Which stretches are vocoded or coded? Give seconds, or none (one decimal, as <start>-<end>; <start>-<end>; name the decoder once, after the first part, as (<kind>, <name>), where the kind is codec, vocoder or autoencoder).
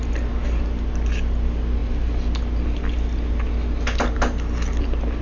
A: none